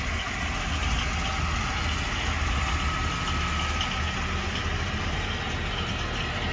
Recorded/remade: recorded